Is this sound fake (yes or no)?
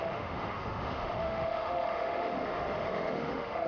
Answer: yes